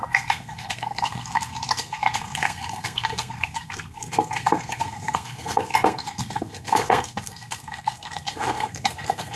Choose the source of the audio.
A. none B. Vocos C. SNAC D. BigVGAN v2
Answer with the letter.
C